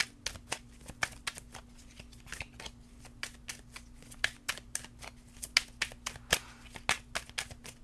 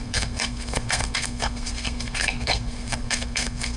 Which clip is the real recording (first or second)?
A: first